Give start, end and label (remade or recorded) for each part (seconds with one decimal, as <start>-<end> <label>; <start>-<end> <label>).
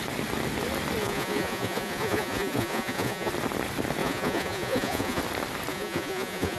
0.0-1.0 recorded; 1.0-3.3 remade; 3.3-4.0 recorded; 4.0-5.2 remade; 5.2-5.7 recorded; 5.7-6.6 remade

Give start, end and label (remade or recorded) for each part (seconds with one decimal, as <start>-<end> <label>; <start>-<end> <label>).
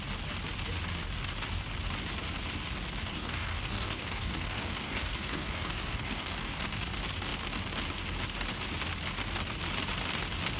0.0-3.1 recorded; 3.1-6.8 remade; 6.8-10.6 recorded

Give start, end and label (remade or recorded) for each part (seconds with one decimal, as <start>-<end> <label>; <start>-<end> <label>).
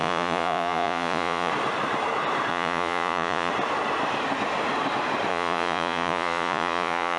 0.0-1.5 remade; 1.5-2.5 recorded; 2.5-3.5 remade; 3.5-5.3 recorded; 5.3-7.2 remade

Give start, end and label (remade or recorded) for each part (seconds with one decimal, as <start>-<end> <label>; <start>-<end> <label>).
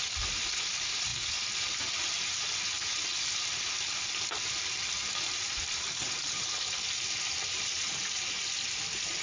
0.0-9.2 recorded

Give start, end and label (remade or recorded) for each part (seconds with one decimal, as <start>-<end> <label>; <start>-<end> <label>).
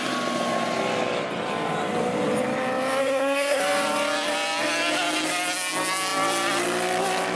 0.0-3.0 recorded; 3.0-3.6 remade; 3.6-7.4 recorded